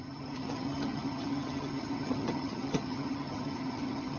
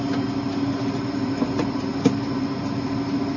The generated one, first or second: first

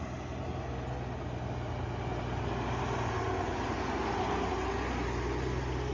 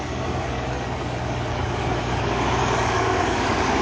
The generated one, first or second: second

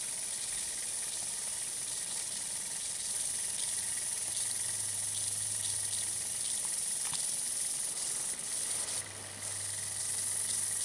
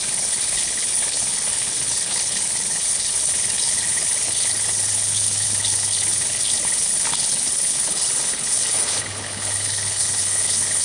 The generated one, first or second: second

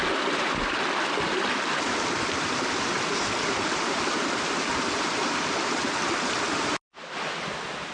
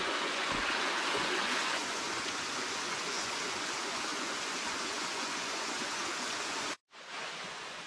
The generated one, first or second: second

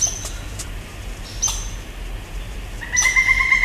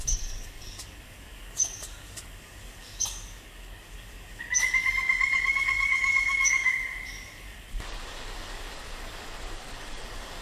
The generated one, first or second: second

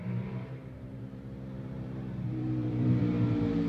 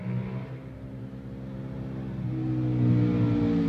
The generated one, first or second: first